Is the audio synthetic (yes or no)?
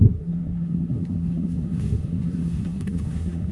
yes